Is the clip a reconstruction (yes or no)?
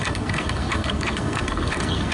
yes